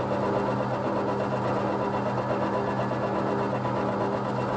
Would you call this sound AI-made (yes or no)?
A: no